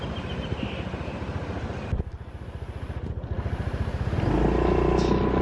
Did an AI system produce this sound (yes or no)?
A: no